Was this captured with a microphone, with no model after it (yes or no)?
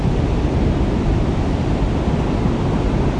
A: yes